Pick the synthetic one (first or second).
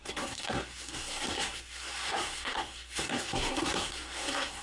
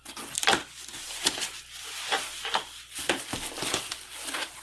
first